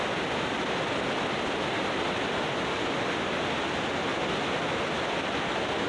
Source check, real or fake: real